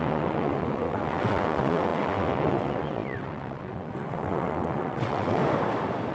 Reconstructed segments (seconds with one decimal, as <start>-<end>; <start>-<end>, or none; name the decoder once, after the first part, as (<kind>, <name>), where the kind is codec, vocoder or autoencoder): 0.0-5.4 (vocoder, WaveNeXt)